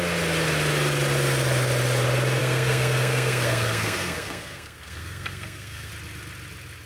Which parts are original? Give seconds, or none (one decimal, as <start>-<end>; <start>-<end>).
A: 0.0-2.4; 5.9-6.9